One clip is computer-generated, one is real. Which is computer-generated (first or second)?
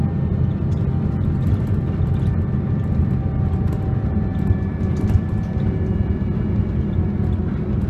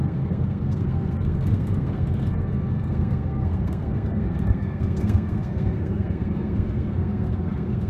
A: second